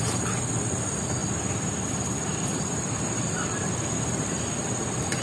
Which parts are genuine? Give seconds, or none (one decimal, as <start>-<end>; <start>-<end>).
0.0-5.2